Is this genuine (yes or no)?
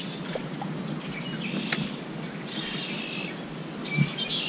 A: yes